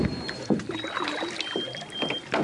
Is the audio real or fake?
real